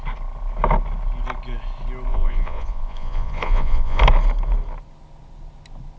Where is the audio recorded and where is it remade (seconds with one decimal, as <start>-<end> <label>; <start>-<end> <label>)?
0.0-2.1 recorded; 2.1-4.0 remade; 4.0-6.0 recorded